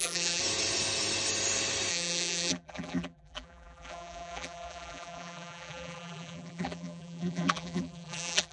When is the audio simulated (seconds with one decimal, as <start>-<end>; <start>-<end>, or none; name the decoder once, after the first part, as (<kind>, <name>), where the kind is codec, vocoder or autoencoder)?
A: 0.0-0.4 (vocoder, BigVGAN v2); 1.9-8.5